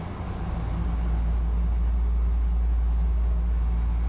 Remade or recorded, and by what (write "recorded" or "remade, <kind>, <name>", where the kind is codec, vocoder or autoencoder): recorded